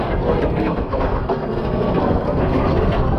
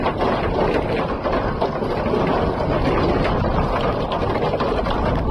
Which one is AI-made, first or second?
first